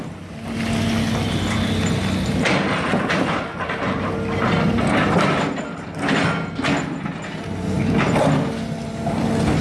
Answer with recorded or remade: recorded